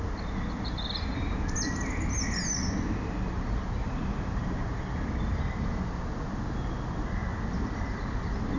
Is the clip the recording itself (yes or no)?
yes